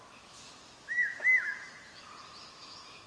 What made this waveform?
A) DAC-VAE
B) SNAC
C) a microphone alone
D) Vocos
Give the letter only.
A